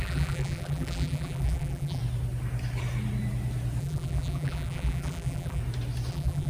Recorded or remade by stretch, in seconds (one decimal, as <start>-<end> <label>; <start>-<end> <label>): 0.0-2.0 remade; 2.0-3.8 recorded; 3.8-5.6 remade; 5.6-6.1 recorded; 6.1-6.5 remade